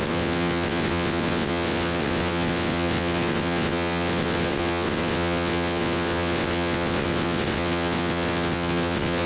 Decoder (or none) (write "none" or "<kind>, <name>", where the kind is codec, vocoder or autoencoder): vocoder, WaveNeXt